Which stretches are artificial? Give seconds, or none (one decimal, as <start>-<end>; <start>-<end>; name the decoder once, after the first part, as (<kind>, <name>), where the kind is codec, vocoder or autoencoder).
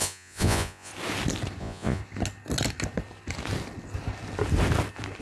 0.0-0.9 (vocoder, Vocos); 1.6-2.0